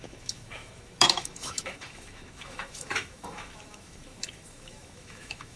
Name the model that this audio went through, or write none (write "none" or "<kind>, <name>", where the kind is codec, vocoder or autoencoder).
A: autoencoder, DAC-VAE